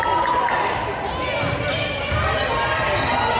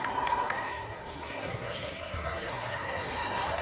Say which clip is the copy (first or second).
second